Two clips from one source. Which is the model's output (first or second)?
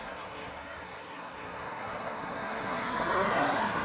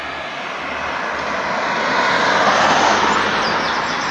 first